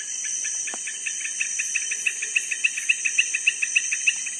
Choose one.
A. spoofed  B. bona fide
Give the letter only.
B